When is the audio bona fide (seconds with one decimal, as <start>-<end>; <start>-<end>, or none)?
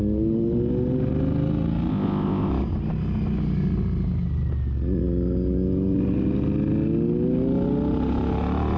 0.0-1.9; 2.5-8.8